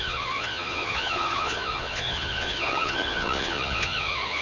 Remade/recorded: remade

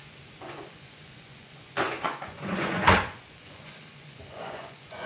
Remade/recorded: remade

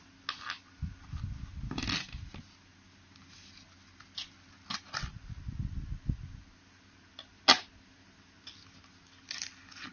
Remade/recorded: recorded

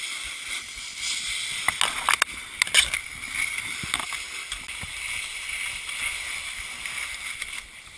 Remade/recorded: recorded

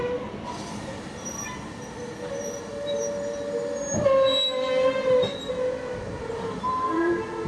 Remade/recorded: recorded